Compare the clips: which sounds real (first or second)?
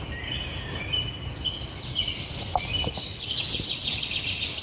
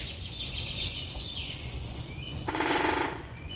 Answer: first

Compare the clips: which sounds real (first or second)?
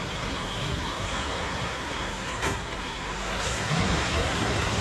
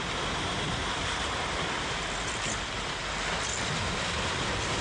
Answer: second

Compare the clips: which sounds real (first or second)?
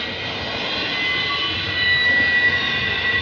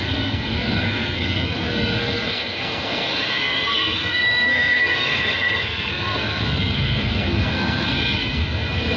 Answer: first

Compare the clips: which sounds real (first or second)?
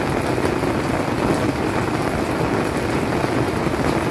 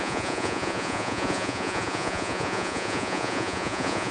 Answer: first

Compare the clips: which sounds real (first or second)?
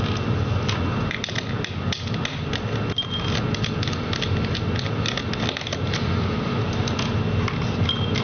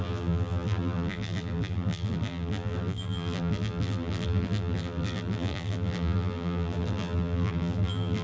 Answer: first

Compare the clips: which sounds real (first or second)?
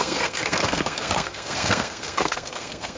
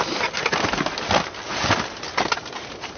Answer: second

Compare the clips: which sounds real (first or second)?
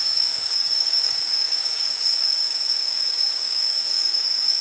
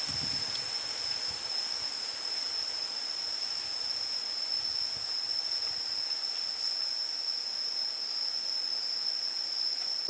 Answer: second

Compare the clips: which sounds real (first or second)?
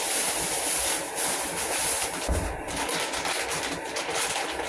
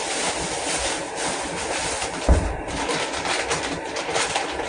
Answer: first